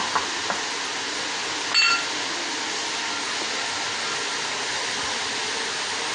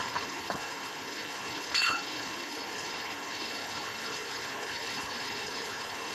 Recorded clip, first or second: first